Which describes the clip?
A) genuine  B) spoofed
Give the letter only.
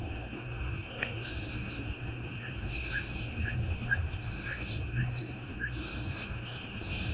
B